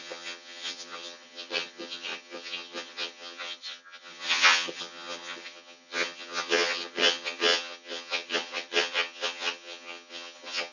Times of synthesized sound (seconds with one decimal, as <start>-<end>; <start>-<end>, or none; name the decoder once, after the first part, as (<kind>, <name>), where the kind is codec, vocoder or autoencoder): 0.0-10.7 (vocoder, HiFi-GAN)